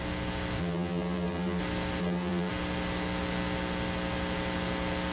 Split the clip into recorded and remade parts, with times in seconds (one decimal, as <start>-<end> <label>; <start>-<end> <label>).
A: 0.0-0.6 recorded; 0.6-1.6 remade; 1.6-2.0 recorded; 2.0-2.5 remade; 2.5-5.1 recorded